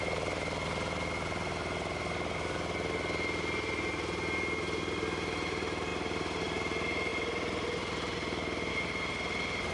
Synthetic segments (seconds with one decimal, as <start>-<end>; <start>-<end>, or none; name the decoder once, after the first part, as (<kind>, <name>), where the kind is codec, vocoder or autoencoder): none

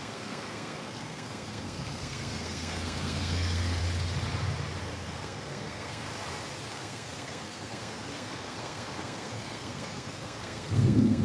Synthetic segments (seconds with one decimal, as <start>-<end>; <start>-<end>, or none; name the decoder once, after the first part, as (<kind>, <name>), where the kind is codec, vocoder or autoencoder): 0.0-3.8 (codec, SNAC); 4.8-6.1; 6.7-11.2

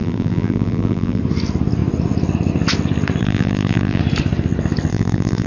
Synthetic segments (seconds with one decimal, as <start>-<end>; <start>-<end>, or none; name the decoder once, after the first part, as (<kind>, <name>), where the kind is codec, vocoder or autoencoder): 0.0-1.2 (vocoder, BigVGAN v2); 3.2-4.0; 4.9-5.5